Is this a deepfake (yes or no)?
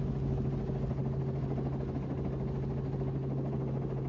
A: no